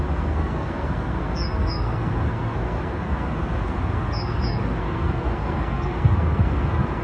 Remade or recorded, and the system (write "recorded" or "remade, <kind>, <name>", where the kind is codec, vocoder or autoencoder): remade, codec, SNAC